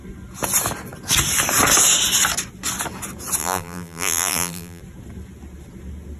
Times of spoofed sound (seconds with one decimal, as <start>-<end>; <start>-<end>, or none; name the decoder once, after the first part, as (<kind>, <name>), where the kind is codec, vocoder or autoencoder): 3.4-4.8 (vocoder, BigVGAN v2)